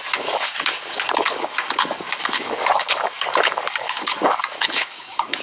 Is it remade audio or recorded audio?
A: remade